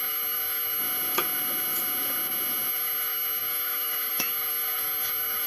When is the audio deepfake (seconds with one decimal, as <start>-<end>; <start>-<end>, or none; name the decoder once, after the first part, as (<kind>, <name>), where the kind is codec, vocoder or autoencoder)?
0.0-0.8 (autoencoder, DAC-VAE); 2.7-5.5